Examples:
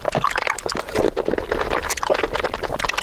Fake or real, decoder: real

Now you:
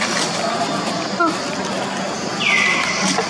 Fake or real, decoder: real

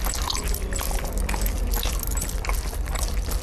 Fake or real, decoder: real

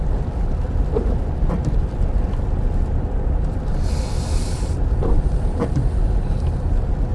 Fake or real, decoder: real